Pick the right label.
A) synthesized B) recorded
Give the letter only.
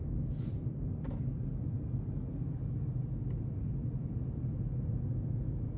B